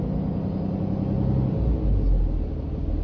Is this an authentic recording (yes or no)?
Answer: yes